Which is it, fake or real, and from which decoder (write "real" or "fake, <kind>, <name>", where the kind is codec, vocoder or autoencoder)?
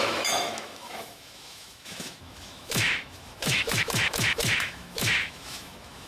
fake, autoencoder, DAC-VAE